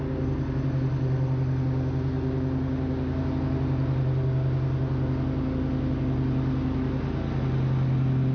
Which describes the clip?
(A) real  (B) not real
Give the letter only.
A